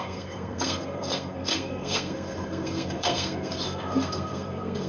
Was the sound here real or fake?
fake